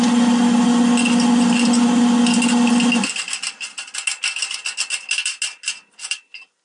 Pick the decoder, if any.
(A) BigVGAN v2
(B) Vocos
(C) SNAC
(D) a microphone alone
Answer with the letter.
D